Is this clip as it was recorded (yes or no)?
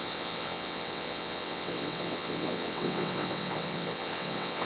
no